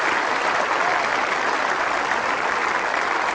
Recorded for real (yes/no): yes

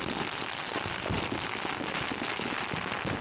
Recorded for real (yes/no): yes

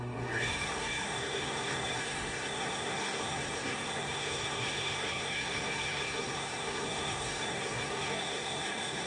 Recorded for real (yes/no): no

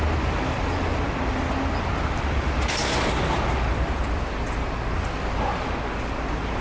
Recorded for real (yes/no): yes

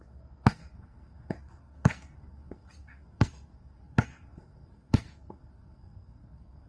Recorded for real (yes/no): no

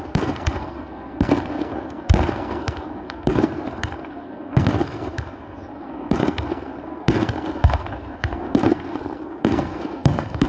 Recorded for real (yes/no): no